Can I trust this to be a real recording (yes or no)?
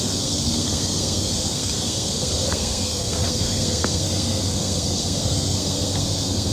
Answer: no